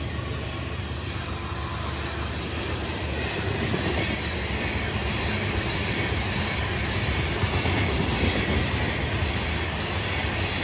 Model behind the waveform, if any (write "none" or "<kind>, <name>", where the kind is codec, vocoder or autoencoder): none